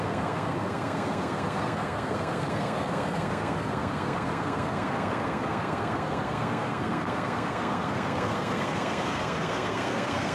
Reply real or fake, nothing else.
fake